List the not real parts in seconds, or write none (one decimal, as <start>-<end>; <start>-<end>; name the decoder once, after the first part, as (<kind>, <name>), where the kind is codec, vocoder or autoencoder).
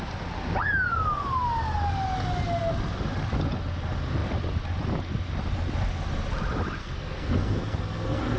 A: 6.8-8.4 (codec, SNAC)